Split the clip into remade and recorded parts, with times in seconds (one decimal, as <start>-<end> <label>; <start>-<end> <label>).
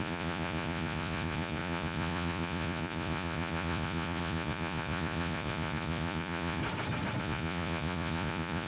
0.0-6.6 remade; 6.6-7.2 recorded; 7.2-8.7 remade